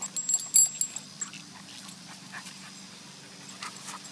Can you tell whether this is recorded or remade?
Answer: recorded